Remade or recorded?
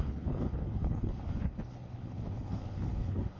remade